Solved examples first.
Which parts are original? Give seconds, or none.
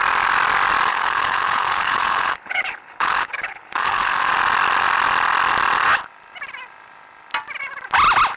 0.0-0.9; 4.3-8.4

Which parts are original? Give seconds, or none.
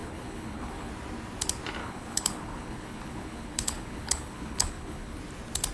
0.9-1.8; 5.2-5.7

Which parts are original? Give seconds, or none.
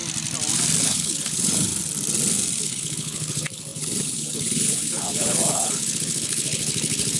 0.0-0.8; 1.7-2.6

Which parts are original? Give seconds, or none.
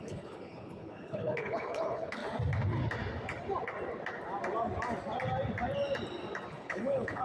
2.2-6.5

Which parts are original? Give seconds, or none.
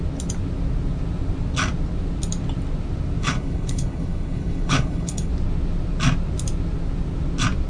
0.0-3.2; 5.3-7.7